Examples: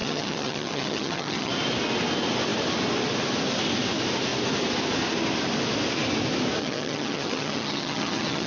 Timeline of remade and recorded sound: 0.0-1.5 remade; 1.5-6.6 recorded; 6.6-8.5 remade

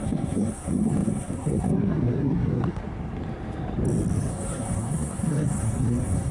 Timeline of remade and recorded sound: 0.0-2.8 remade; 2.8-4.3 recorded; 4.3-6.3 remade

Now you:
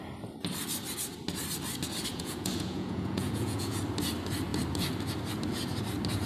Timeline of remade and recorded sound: 0.0-2.1 recorded; 2.1-3.8 remade; 3.8-6.3 recorded

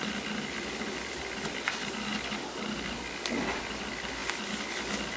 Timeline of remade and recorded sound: 0.0-5.2 recorded